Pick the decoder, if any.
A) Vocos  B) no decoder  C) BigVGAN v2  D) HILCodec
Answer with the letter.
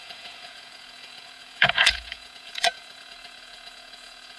A